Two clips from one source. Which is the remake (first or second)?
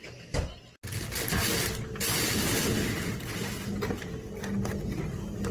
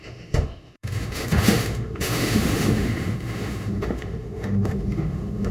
second